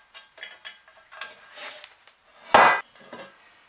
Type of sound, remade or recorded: recorded